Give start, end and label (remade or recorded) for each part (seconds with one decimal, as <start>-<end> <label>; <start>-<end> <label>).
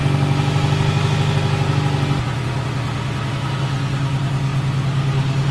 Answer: 0.0-5.5 recorded